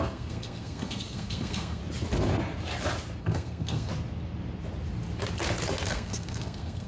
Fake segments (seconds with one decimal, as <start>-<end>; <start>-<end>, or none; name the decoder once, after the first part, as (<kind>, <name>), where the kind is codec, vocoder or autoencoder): 0.0-1.8 (codec, SNAC); 3.2-3.9; 5.9-6.9